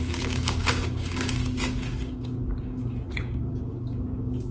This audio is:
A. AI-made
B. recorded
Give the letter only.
A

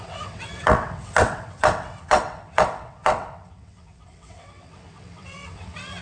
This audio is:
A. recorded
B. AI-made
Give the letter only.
B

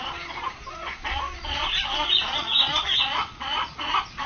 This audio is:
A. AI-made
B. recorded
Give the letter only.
A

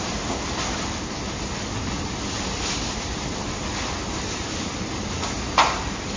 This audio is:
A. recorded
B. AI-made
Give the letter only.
A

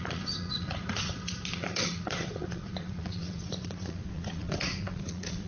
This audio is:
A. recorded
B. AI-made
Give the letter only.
B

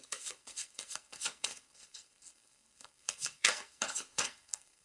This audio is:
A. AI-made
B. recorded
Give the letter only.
A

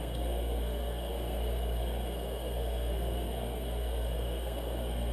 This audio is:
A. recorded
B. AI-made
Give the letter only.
B